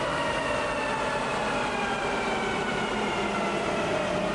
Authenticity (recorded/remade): recorded